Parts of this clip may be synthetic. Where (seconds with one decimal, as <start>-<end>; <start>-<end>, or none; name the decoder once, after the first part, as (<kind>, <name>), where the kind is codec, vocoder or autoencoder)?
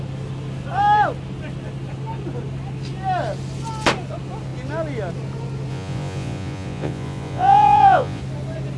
5.7-8.2 (vocoder, Vocos)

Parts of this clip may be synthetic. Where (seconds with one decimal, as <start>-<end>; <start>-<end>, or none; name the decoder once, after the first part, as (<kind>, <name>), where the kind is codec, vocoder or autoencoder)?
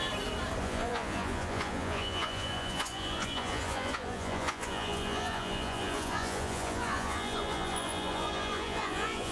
0.6-9.3 (vocoder, Vocos)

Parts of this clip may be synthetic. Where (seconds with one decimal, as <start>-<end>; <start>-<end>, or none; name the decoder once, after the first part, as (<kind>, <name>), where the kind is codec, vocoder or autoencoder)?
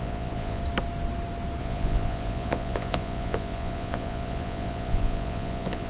0.0-0.6 (vocoder, Vocos); 1.6-5.9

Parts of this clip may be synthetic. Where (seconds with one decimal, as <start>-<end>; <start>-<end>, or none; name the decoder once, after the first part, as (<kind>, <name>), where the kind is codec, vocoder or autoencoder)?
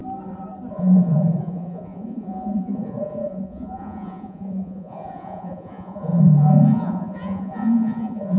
0.7-8.4 (vocoder, Vocos)